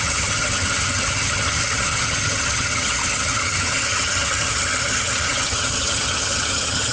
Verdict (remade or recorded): remade